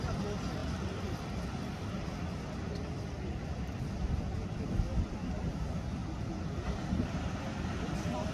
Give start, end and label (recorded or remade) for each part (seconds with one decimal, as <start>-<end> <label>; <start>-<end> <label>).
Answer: 0.0-8.3 recorded